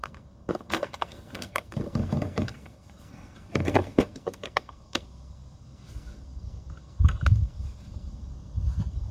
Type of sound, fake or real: fake